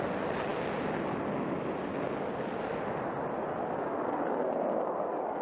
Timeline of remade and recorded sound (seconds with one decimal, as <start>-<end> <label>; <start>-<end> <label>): 0.0-5.4 recorded